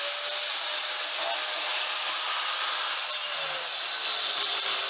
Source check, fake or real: real